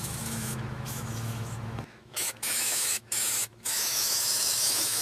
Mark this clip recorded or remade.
remade